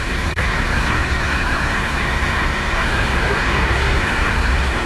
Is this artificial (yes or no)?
yes